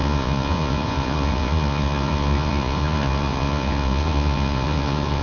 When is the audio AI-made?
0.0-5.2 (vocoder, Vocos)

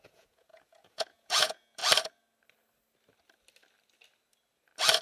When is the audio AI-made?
0.0-1.8 (vocoder, Vocos)

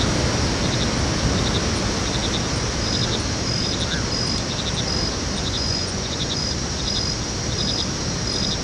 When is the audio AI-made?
5.4-6.4 (vocoder, Vocos)

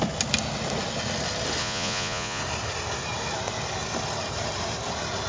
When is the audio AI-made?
1.6-2.4 (vocoder, Vocos)

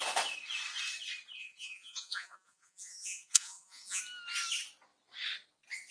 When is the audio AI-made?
1.4-4.0 (vocoder, Vocos)

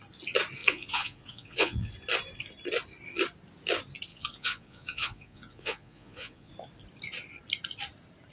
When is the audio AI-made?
0.6-1.9 (vocoder, Vocos); 4.1-6.5

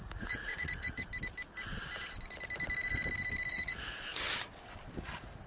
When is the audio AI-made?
0.0-1.1 (vocoder, Vocos); 3.5-4.1

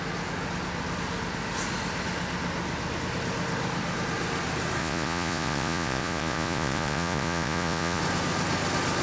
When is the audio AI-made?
4.8-8.0 (vocoder, Vocos)